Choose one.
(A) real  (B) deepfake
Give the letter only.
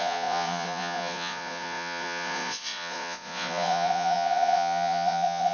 B